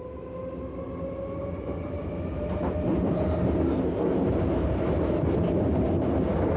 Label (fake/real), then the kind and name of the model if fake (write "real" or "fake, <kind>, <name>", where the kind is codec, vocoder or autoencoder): real